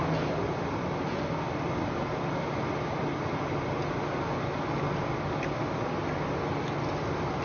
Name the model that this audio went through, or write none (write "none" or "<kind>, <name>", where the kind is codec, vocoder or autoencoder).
none